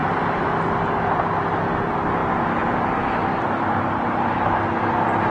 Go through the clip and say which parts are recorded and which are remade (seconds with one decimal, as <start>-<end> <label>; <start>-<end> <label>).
0.0-5.3 recorded